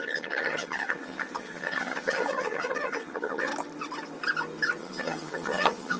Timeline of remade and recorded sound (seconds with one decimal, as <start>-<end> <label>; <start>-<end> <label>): 0.0-3.5 remade; 3.5-4.8 recorded; 4.8-6.0 remade